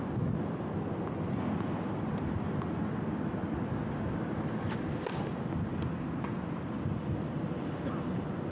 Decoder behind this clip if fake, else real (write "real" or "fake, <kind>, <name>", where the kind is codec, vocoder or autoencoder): real